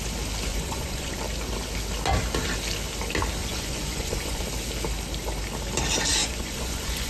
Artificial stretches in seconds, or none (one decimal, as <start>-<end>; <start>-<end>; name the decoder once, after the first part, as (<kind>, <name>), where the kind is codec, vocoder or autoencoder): 0.5-1.1 (vocoder, Vocos); 3.4-4.4; 6.2-7.1